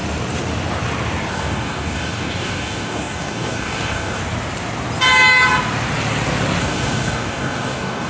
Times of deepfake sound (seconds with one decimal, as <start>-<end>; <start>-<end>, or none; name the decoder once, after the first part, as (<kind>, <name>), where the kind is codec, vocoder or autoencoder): 1.3-4.2 (codec, DAC); 6.6-8.1